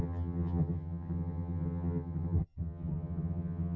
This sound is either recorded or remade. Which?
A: remade